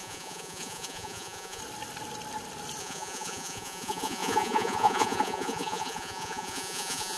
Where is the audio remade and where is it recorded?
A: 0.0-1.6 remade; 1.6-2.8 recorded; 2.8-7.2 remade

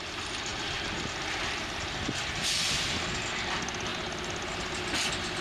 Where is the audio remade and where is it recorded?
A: 0.0-5.4 recorded

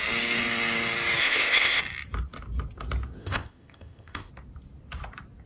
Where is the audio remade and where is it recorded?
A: 0.0-1.2 recorded; 1.2-1.8 remade; 1.8-3.2 recorded; 3.2-4.3 remade; 4.3-5.5 recorded

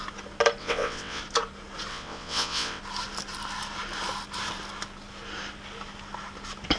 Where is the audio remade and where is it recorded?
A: 0.0-0.6 recorded; 0.6-1.2 remade; 1.2-1.9 recorded; 1.9-2.8 remade; 2.8-6.8 recorded

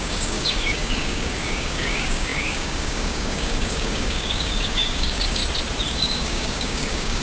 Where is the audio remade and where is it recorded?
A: 0.0-5.4 remade; 5.4-5.9 recorded; 5.9-7.2 remade

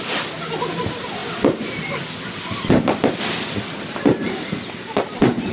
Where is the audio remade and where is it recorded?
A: 0.0-5.5 recorded